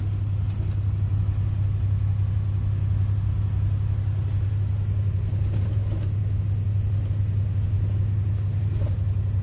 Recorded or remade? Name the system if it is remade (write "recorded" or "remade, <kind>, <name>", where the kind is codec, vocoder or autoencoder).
recorded